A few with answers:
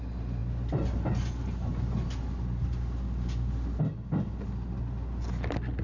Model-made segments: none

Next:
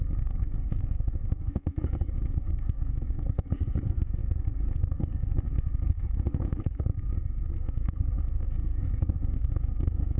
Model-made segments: 0.0-10.2 (codec, SNAC)

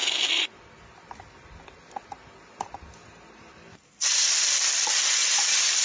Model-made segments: none